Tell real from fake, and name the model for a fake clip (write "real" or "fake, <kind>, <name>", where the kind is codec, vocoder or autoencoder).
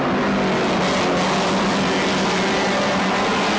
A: real